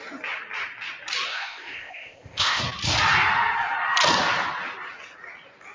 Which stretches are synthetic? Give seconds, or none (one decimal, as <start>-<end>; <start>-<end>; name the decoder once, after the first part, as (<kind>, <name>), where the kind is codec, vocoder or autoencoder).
1.3-2.6 (codec, ZipCodec)